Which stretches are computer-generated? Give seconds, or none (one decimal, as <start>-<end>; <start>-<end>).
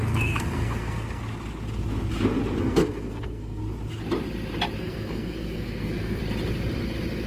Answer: 0.0-1.2; 2.6-3.6; 4.8-6.2